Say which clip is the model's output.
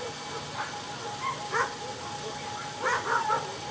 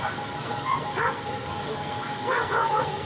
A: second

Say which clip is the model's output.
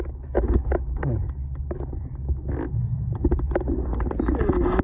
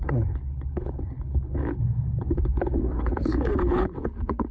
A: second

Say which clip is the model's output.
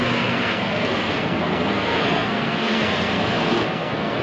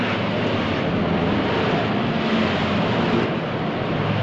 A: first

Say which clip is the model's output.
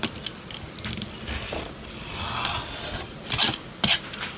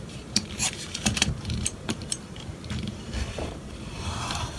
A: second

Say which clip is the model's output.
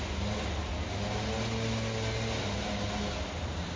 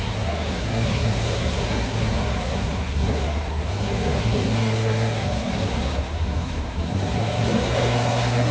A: second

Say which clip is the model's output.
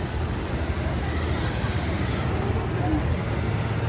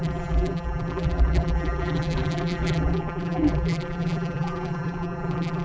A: second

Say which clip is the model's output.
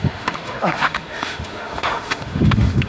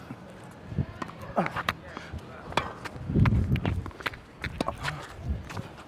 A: first